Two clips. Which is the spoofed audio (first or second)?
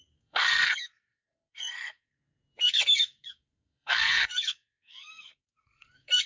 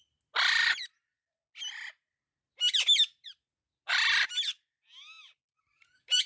first